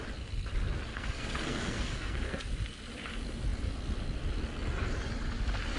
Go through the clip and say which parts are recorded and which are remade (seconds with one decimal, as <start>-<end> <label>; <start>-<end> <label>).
0.0-0.9 recorded; 0.9-2.4 remade; 2.4-5.8 recorded